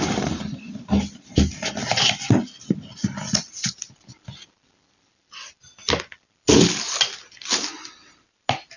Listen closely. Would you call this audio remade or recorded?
recorded